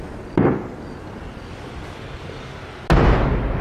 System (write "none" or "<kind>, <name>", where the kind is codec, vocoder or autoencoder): none